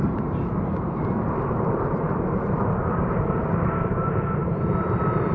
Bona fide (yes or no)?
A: no